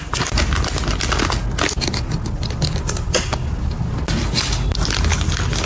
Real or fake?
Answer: real